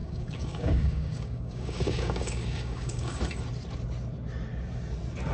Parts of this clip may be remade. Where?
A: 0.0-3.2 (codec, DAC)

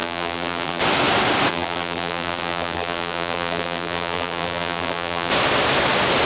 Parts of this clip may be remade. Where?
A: 0.0-0.8 (vocoder, BigVGAN v2); 1.5-5.3

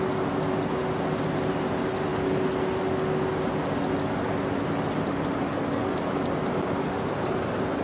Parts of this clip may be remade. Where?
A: none